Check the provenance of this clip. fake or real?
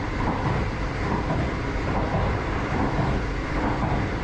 fake